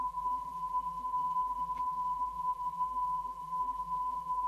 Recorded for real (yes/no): no